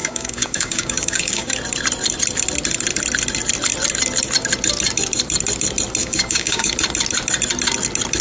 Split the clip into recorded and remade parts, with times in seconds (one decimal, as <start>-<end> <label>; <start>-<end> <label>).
0.0-1.5 remade; 1.5-6.0 recorded; 6.0-6.7 remade; 6.7-8.2 recorded